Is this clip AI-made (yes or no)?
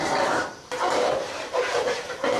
yes